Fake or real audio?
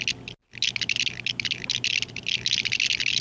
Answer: real